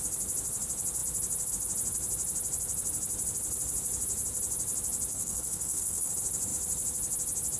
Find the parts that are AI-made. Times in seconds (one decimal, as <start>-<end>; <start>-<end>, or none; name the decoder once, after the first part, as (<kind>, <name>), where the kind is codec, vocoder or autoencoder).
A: 5.1-6.1 (codec, SNAC)

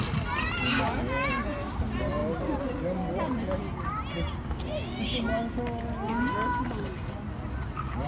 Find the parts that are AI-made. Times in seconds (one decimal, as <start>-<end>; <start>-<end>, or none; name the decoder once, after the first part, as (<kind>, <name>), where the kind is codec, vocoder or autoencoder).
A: none

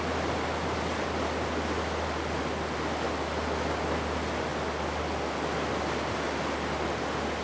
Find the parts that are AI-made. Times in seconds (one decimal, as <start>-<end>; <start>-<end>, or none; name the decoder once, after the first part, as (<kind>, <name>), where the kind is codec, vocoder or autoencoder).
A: none

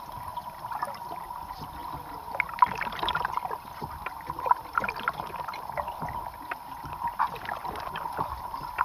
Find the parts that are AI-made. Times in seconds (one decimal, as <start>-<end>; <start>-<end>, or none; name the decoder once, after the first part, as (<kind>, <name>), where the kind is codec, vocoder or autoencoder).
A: none

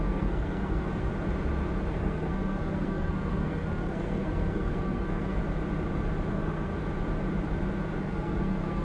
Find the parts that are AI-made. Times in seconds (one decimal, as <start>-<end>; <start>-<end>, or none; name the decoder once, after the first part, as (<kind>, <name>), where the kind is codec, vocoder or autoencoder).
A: 0.0-1.1 (codec, SNAC); 1.9-5.4; 6.3-6.7; 8.0-8.8

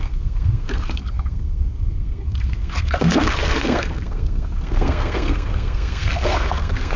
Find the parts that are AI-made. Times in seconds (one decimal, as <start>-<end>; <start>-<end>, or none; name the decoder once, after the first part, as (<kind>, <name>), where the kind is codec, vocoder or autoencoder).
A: 0.0-7.0 (codec, SNAC)

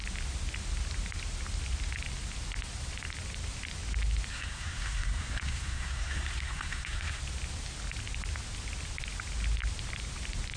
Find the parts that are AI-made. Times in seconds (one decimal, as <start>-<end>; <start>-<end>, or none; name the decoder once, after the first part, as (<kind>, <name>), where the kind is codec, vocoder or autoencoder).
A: 4.3-7.2 (codec, SNAC)